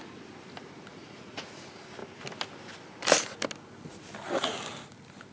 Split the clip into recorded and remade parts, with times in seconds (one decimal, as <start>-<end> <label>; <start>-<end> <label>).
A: 0.0-0.9 recorded; 0.9-1.4 remade; 1.4-5.3 recorded